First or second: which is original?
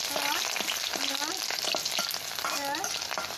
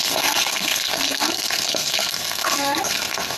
first